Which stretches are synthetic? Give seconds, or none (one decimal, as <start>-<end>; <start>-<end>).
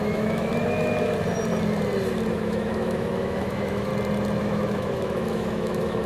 0.0-0.5; 2.3-3.9; 4.4-6.1